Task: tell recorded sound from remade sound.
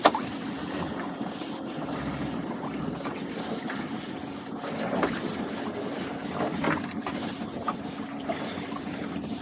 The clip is recorded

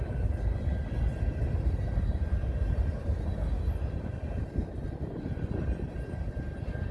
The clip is recorded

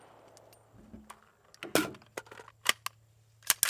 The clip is recorded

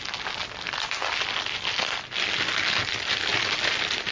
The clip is recorded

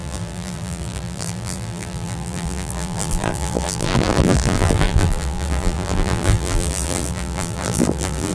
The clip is remade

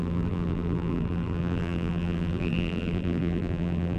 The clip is remade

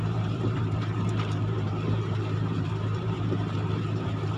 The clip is remade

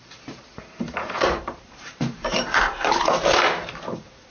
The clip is remade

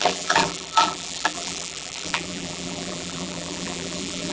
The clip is remade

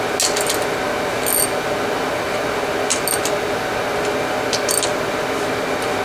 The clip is recorded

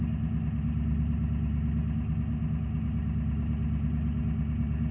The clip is recorded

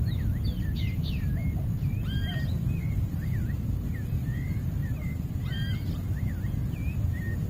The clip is recorded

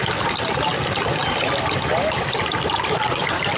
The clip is remade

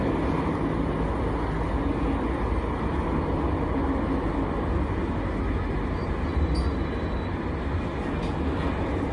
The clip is recorded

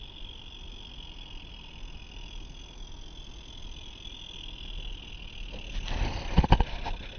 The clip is recorded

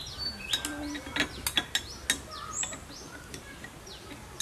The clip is recorded